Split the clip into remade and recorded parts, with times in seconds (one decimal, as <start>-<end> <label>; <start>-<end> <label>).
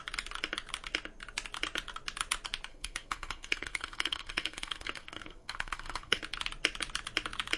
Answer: 0.0-2.7 recorded; 2.7-6.2 remade; 6.2-7.6 recorded